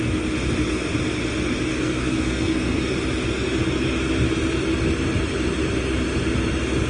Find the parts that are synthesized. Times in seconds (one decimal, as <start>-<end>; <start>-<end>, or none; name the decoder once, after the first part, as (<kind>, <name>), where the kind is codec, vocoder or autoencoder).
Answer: 1.7-2.9 (codec, SNAC)

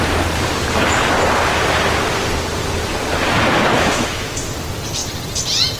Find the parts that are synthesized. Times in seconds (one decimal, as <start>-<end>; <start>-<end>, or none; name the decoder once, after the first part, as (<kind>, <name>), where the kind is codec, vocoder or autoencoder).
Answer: 3.7-4.4 (autoencoder, DAC-VAE)

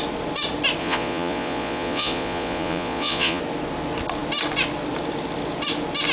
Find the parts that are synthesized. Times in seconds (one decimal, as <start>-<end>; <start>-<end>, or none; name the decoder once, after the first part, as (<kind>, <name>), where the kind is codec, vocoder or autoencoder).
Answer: 0.8-3.4 (vocoder, Vocos)

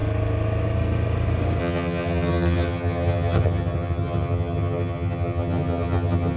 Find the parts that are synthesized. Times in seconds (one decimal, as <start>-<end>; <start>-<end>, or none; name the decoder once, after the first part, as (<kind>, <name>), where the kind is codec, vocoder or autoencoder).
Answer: 1.6-6.4 (vocoder, HiFi-GAN)

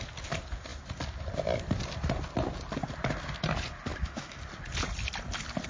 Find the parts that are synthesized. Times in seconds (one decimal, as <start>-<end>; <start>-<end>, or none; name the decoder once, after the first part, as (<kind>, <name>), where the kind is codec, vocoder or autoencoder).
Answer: 3.9-4.4 (autoencoder, DAC-VAE)

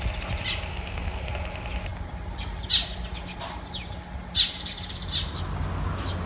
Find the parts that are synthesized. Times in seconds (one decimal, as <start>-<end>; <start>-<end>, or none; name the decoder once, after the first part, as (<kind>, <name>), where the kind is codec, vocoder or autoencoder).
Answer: 0.7-1.3 (codec, SNAC)

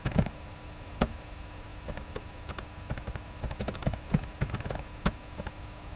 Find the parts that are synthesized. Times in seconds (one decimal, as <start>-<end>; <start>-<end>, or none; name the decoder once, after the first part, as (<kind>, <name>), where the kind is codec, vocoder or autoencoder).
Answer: 0.0-6.0 (autoencoder, DAC-VAE)

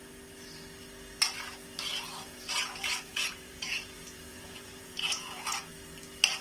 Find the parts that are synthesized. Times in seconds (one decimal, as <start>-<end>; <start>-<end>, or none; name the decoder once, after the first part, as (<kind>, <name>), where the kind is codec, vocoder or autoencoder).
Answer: 1.9-5.7 (vocoder, Vocos)